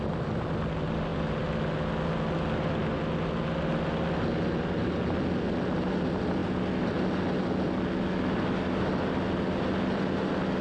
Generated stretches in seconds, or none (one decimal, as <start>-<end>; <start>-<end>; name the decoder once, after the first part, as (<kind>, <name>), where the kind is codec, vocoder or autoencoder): none